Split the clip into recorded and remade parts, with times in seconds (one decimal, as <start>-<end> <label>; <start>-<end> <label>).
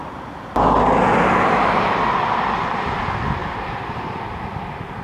0.0-3.0 recorded; 3.0-3.4 remade; 3.4-4.6 recorded; 4.6-5.0 remade